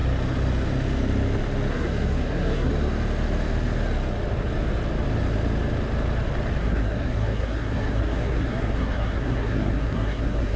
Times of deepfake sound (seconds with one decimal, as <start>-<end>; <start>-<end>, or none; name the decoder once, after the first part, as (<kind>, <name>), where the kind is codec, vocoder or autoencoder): 1.7-2.7 (codec, SNAC); 6.6-10.6